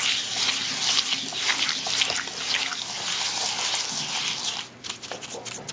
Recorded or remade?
recorded